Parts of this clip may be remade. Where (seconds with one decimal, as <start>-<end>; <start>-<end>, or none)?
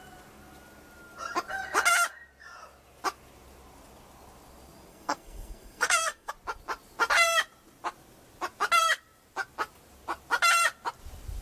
4.9-6.3